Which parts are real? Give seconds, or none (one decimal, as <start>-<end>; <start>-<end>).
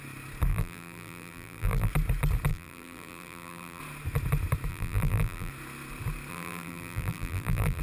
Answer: 0.0-0.5; 1.9-2.5; 3.8-4.7; 5.5-6.3